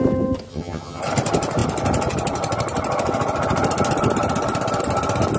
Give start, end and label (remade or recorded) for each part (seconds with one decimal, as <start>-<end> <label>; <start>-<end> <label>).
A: 0.0-0.5 recorded; 0.5-1.0 remade; 1.0-5.4 recorded